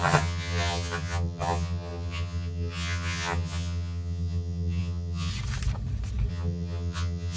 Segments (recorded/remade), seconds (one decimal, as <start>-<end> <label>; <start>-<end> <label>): 0.0-5.3 remade; 5.3-6.3 recorded; 6.3-7.4 remade